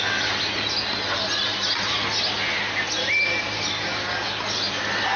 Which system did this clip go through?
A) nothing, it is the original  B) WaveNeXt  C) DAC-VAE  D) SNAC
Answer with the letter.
A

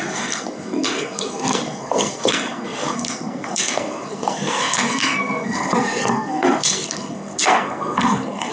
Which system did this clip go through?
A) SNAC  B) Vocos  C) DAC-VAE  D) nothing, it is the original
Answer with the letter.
A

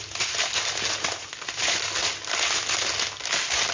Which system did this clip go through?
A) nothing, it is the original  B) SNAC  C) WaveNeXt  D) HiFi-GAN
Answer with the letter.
A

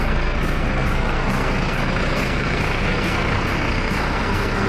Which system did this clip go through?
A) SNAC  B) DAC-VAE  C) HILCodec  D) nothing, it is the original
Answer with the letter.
A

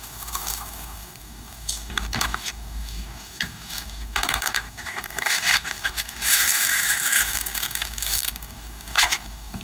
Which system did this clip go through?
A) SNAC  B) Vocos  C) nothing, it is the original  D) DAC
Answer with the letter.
D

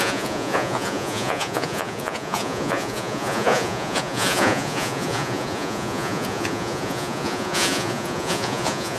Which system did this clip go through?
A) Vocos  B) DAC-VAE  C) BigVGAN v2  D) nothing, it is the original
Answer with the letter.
A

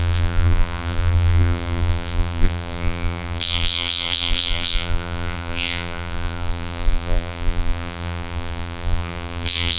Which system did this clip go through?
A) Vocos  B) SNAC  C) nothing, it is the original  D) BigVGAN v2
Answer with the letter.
D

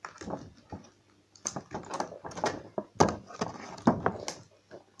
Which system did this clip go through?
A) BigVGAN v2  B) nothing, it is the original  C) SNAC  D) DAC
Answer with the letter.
B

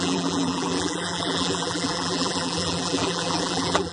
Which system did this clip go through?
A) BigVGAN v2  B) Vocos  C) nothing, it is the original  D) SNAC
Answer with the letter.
A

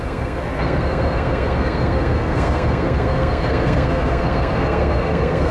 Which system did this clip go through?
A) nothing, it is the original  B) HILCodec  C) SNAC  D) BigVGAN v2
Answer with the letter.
C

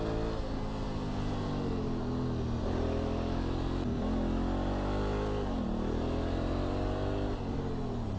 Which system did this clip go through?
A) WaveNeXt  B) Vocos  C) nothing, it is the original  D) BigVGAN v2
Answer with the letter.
C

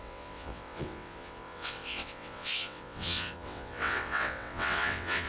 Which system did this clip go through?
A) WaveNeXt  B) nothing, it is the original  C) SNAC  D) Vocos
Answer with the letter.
A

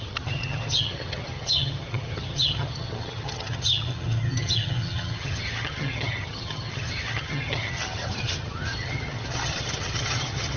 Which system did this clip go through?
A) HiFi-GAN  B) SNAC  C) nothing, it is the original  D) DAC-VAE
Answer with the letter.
A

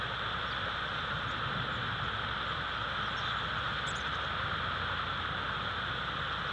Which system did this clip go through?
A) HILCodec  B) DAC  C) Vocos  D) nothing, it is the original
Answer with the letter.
D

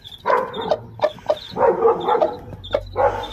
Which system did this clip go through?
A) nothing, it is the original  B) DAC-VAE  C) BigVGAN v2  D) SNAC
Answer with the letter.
A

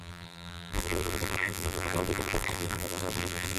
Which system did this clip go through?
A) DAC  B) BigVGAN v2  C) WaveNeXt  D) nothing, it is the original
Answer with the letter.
B